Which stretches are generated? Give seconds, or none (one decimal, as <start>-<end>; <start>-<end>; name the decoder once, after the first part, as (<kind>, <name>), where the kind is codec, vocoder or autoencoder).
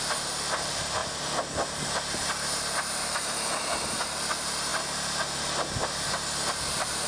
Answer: none